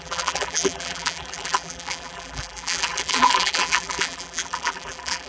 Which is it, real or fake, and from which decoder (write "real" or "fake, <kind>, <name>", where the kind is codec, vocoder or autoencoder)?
fake, vocoder, BigVGAN v2